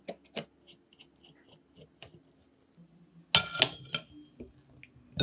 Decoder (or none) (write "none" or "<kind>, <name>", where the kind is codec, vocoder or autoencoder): none